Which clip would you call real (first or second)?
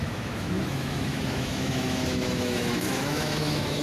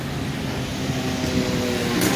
second